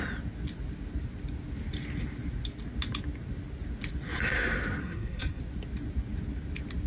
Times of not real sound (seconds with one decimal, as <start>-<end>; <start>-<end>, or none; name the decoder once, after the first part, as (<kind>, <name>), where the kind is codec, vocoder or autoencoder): 4.8-5.4 (codec, SNAC)